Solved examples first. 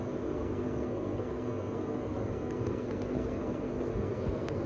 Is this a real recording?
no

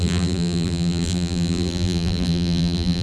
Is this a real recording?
no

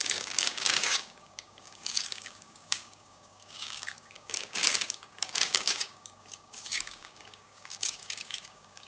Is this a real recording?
no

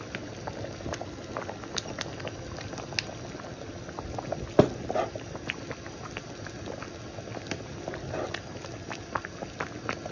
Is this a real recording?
yes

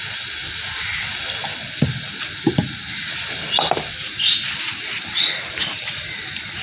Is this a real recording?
yes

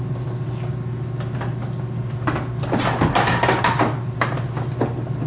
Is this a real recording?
yes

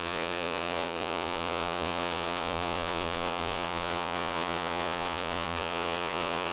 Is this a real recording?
no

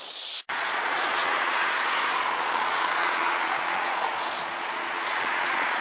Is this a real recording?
no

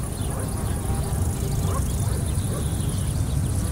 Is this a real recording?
yes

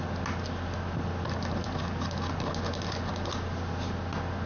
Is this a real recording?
yes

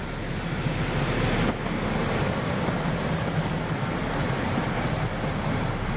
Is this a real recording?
yes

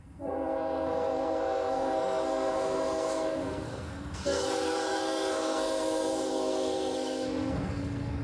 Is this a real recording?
no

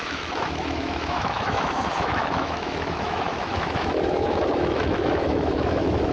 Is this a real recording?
no